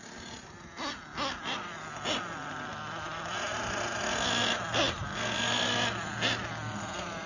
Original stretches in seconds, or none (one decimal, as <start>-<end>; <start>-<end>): 0.0-7.3